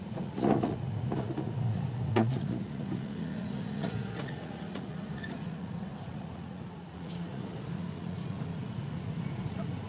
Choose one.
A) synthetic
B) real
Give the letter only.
A